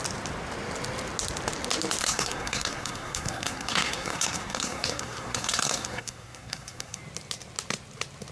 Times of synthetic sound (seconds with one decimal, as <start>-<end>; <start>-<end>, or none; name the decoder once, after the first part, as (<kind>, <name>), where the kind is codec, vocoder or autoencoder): 2.0-7.0 (codec, SNAC)